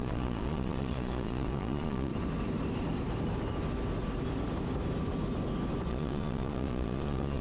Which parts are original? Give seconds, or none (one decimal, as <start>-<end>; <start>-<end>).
2.1-5.9